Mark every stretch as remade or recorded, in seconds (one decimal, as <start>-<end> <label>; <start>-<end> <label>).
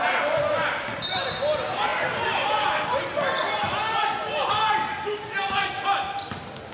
0.0-6.7 recorded